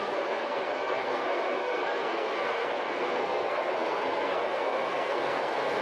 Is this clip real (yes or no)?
no